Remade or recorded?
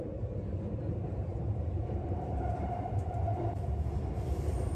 remade